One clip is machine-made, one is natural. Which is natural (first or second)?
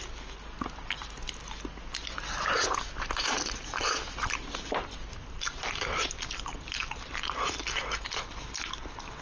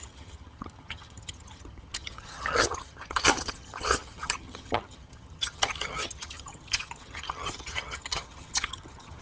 first